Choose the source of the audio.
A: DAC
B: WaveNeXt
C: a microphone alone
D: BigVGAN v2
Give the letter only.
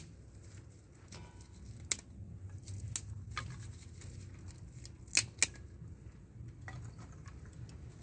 C